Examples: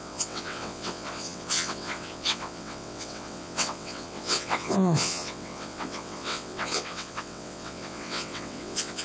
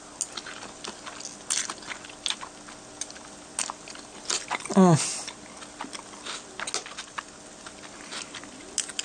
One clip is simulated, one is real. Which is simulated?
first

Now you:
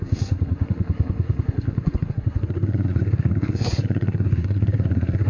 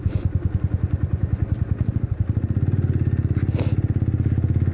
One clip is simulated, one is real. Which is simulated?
first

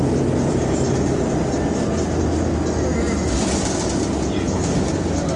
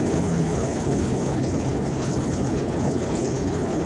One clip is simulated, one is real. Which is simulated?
second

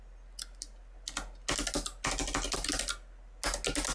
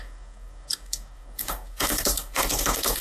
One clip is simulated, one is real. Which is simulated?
second